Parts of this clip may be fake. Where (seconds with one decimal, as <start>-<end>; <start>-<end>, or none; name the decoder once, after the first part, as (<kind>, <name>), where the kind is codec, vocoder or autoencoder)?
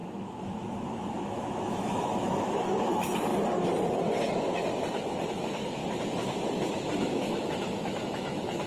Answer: 0.0-3.3 (autoencoder, DAC-VAE); 5.3-5.8; 7.1-8.7